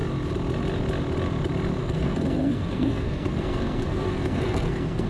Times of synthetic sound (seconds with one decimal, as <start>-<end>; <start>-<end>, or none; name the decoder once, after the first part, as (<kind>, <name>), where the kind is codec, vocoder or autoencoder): 1.8-5.1 (codec, SNAC)